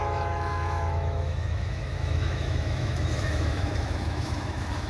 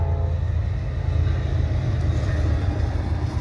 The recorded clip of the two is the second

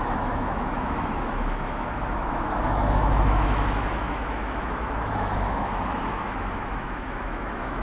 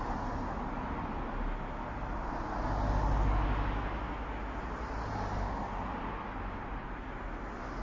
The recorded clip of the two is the second